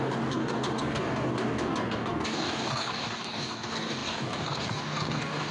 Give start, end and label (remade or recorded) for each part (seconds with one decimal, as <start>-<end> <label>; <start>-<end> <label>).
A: 0.0-5.5 remade